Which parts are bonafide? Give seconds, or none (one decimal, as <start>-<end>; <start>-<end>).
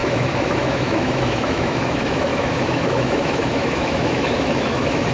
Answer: none